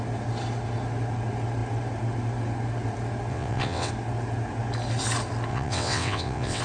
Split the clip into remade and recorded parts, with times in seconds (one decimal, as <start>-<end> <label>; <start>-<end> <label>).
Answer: 0.0-3.3 recorded; 3.3-3.9 remade; 3.9-5.5 recorded; 5.5-6.6 remade